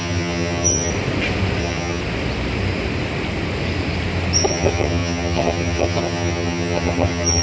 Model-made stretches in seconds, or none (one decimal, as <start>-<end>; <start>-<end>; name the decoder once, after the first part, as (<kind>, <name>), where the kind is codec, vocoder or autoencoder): 0.0-0.9 (vocoder, HiFi-GAN); 1.6-2.0; 4.5-7.4